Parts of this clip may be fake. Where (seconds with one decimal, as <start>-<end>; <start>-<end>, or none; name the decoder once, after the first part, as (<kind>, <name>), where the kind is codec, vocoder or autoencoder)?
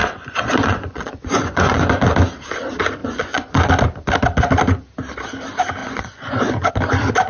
0.0-1.9 (vocoder, Vocos); 3.0-3.7; 5.8-6.7